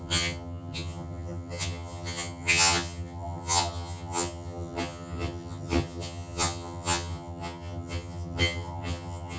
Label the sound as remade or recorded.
remade